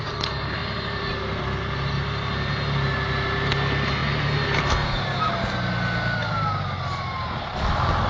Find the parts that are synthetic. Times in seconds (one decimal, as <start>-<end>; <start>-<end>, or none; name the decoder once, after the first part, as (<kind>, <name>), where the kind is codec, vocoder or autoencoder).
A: none